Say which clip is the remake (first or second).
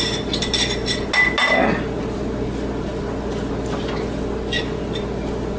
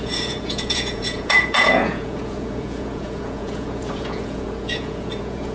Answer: second